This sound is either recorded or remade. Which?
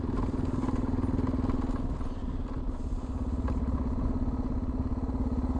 recorded